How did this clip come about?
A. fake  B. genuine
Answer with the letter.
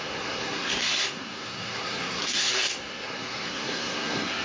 A